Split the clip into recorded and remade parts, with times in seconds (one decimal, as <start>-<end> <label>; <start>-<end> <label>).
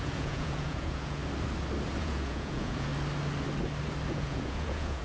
0.0-1.2 remade; 1.2-2.0 recorded; 2.0-2.9 remade; 2.9-4.1 recorded; 4.1-5.0 remade